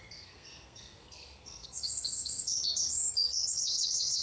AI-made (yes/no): yes